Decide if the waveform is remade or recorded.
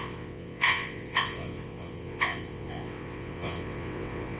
remade